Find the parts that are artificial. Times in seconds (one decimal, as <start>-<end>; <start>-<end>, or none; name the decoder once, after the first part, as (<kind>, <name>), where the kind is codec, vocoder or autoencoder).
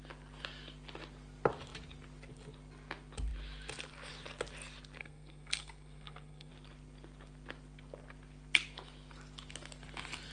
5.0-6.5 (codec, SNAC)